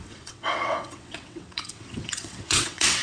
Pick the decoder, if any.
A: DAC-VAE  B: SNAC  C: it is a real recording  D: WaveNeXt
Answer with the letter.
D